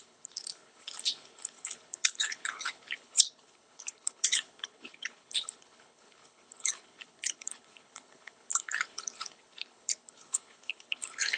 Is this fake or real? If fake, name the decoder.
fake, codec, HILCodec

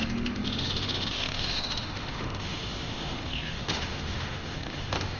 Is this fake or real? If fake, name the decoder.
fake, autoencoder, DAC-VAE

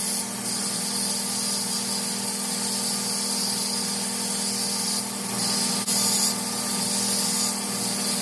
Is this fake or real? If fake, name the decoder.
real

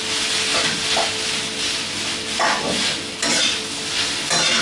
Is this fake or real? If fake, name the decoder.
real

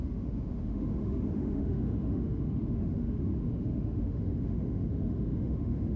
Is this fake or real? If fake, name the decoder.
fake, autoencoder, DAC-VAE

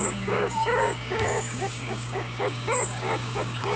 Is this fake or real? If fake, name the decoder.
fake, codec, DAC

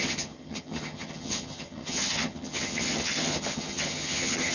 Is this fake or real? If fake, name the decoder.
fake, vocoder, HiFi-GAN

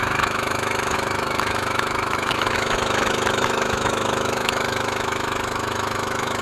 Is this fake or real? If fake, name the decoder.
fake, autoencoder, DAC-VAE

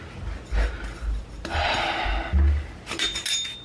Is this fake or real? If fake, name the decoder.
real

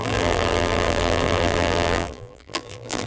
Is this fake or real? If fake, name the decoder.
fake, vocoder, BigVGAN v2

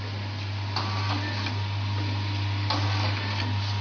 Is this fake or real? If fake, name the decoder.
real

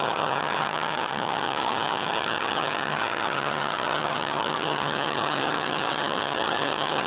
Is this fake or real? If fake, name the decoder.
fake, vocoder, HiFi-GAN